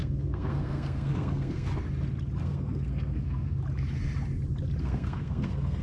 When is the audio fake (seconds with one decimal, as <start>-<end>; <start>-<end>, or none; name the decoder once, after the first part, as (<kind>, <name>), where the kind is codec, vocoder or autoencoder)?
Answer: 0.0-1.7 (codec, SNAC); 2.4-3.6; 4.8-5.8